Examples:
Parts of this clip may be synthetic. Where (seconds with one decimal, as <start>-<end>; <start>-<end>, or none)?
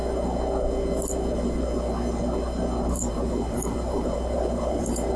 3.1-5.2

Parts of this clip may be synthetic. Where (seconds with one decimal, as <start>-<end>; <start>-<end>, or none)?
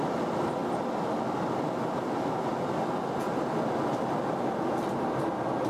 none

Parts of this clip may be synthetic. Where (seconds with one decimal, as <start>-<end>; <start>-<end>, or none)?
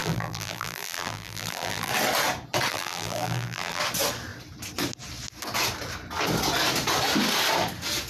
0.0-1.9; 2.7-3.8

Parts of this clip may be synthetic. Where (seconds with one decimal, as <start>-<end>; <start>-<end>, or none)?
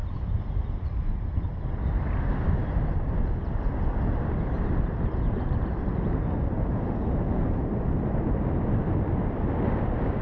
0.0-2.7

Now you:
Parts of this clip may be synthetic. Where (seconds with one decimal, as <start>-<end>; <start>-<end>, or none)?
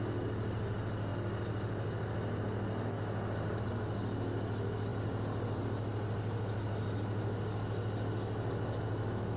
4.9-5.6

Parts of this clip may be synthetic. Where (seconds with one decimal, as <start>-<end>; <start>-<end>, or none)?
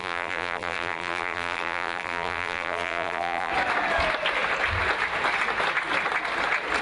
0.0-3.5